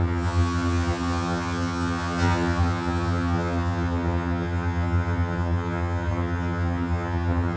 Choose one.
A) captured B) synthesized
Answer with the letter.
B